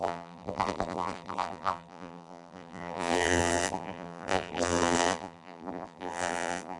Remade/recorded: remade